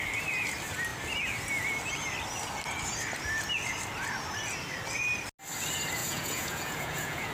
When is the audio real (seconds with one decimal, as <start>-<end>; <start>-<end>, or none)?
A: 0.0-6.0